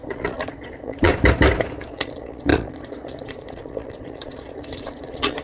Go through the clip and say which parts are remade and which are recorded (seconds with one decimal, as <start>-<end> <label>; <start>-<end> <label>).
0.0-1.1 remade; 1.1-1.9 recorded; 1.9-5.4 remade